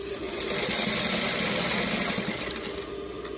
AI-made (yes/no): no